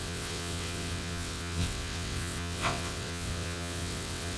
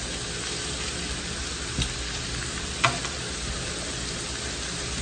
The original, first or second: second